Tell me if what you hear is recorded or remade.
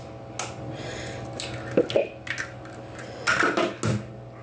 recorded